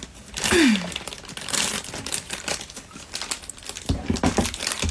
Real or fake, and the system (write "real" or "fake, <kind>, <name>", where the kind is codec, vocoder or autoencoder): real